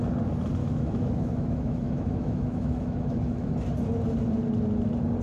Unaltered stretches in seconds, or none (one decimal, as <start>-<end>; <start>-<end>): 0.0-0.6; 3.5-5.2